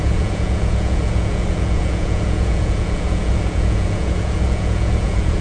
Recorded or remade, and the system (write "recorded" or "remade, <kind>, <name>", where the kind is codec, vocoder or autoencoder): remade, vocoder, Vocos